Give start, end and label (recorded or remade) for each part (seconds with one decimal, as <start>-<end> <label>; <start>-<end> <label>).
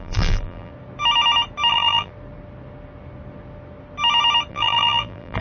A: 0.0-0.7 remade; 0.7-1.7 recorded; 1.7-2.1 remade; 2.1-4.5 recorded; 4.5-5.4 remade